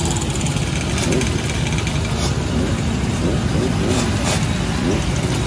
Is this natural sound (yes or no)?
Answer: yes